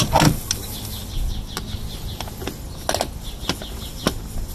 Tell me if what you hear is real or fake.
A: real